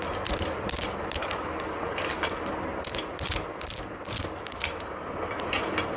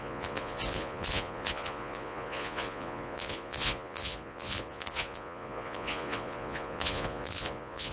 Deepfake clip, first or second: second